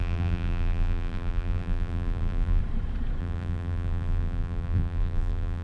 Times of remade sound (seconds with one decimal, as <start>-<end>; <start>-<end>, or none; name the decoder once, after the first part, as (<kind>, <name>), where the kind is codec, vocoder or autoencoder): 0.0-2.6 (vocoder, BigVGAN v2); 3.2-5.6